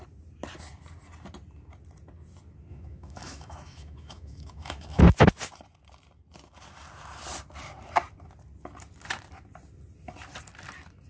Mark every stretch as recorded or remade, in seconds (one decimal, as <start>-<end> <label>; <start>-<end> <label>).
0.0-2.7 recorded; 2.7-5.0 remade; 5.0-11.1 recorded